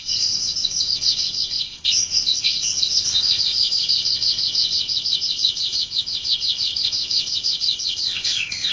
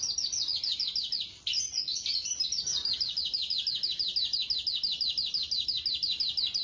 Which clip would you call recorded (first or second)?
second